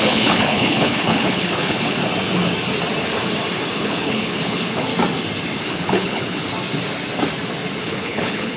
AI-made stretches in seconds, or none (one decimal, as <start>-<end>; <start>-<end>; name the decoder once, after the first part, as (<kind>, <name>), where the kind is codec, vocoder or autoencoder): 0.0-2.0 (codec, HILCodec); 3.7-4.9; 5.6-6.5; 7.8-8.6